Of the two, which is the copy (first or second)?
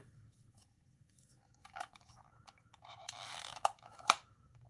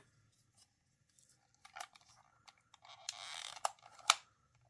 first